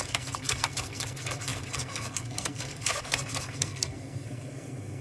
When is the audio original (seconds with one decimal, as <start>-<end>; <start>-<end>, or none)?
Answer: none